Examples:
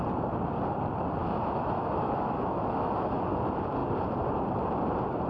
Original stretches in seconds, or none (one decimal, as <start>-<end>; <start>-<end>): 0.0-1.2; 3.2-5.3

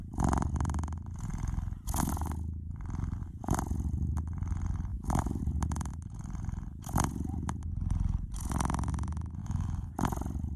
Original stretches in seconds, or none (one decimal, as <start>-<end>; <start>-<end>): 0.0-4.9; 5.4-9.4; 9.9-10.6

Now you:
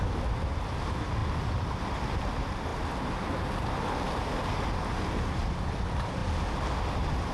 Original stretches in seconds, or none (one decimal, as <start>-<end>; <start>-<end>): 0.0-7.3

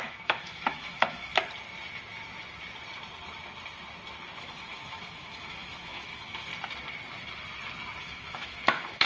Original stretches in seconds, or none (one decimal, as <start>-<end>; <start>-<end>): 1.3-4.4; 6.5-8.0

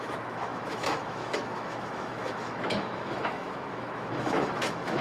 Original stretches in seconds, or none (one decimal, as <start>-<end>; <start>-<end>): none

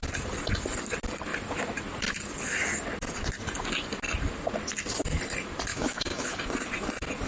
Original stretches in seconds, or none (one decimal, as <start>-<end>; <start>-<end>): 0.0-5.7; 6.4-7.3

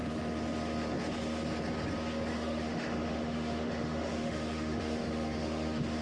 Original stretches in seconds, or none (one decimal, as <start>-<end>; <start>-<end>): 0.0-2.3

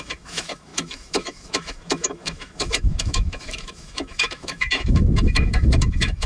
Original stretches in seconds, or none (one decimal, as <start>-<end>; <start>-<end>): none